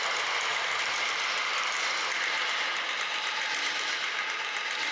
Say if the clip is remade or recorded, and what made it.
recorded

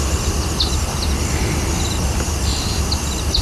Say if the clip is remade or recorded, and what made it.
recorded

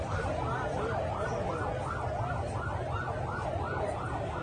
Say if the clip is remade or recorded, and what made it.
recorded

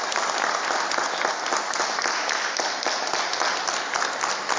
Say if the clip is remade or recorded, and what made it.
recorded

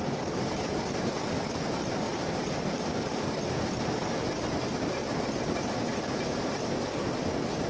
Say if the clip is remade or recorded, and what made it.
remade, vocoder, BigVGAN v2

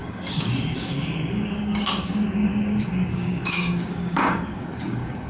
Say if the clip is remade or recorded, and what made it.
remade, codec, DAC